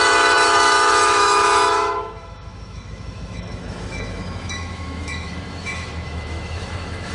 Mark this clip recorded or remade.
remade